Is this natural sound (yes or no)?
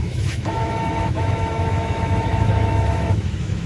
no